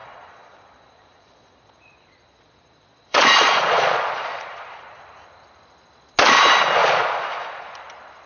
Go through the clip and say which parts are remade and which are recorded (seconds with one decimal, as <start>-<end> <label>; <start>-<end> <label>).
0.0-5.0 remade; 5.0-6.8 recorded; 6.8-7.8 remade; 7.8-8.3 recorded